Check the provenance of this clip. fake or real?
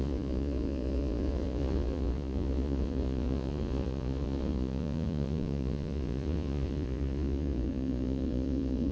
fake